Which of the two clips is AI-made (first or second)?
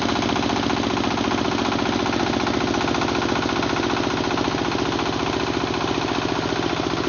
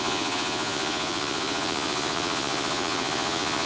second